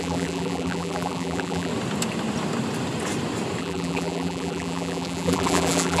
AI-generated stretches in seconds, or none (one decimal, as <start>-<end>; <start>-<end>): 0.0-1.7; 3.6-6.0